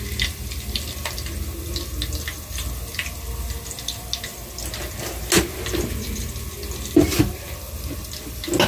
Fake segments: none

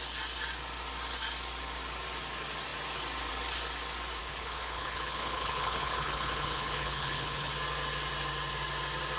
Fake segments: 4.2-7.5 (codec, HILCodec)